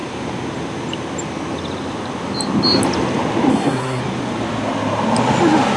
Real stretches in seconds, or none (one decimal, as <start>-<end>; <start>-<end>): 0.0-3.5; 4.0-5.8

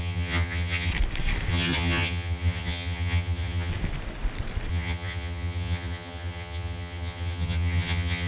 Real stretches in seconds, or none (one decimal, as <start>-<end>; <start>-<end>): 0.9-1.5; 3.7-4.7